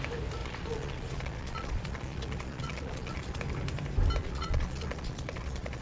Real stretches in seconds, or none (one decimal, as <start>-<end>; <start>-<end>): 0.0-0.4; 3.4-4.2